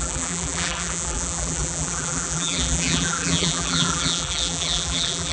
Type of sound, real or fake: fake